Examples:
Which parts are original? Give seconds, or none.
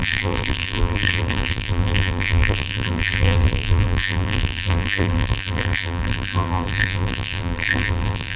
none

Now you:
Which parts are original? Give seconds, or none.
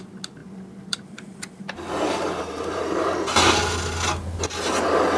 0.0-0.4; 3.5-5.2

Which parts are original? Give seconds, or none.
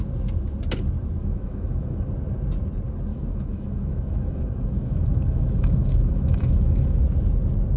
0.0-1.2; 2.1-3.1; 7.0-7.8